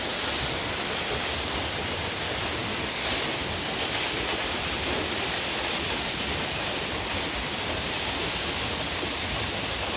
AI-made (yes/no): no